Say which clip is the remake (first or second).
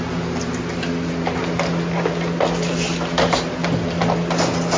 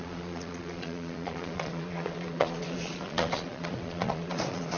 second